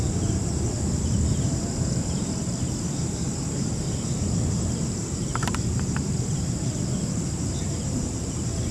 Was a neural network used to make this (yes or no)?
yes